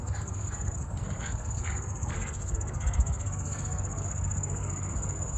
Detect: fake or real fake